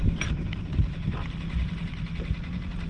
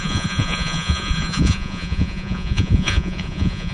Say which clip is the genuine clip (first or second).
first